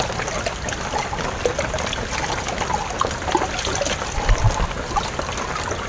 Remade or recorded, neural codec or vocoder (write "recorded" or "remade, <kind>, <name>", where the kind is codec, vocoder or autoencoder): recorded